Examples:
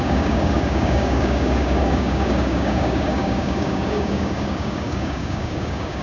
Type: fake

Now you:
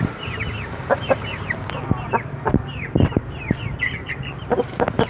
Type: fake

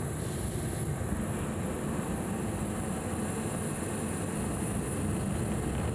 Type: real